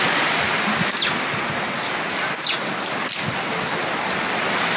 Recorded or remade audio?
recorded